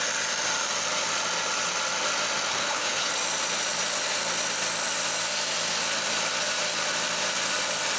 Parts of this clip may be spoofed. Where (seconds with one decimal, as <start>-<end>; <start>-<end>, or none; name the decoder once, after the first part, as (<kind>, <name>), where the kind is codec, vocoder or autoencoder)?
2.5-3.1 (codec, HILCodec)